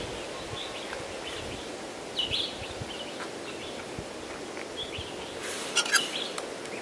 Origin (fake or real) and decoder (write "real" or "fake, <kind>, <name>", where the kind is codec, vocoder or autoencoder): real